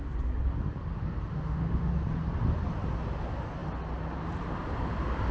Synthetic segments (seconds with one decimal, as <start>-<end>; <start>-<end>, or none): 1.3-1.9